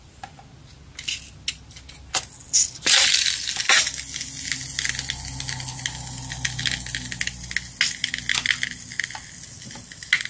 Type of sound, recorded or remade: recorded